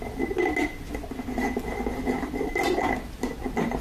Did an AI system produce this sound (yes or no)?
no